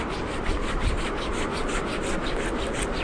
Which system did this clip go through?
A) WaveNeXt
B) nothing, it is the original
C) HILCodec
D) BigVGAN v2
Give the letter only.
B